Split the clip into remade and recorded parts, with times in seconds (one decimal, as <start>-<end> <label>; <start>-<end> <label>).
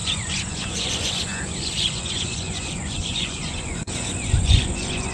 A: 0.0-5.1 remade